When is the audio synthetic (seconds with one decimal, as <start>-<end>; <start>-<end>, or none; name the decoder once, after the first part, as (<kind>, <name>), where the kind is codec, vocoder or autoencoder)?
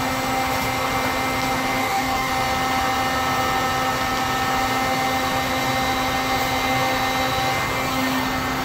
1.8-2.3 (codec, DAC)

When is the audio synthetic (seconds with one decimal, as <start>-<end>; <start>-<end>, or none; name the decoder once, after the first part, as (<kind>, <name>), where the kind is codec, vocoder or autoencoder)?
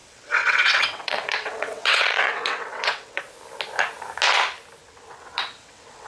0.0-3.2 (vocoder, WaveNeXt); 4.8-6.1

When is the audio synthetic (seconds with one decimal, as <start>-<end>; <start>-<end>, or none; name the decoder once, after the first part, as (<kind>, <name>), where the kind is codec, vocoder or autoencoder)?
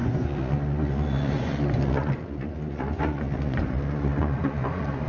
0.0-5.1 (vocoder, Vocos)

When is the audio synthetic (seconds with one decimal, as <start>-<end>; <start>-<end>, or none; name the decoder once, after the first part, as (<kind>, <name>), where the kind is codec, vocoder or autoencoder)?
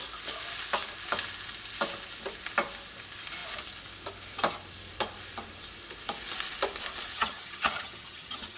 7.1-8.6 (vocoder, HiFi-GAN)